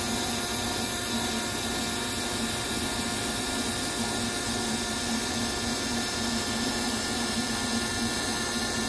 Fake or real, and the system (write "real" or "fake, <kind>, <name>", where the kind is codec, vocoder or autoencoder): real